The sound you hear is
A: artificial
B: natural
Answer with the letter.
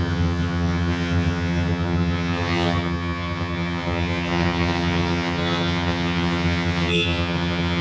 A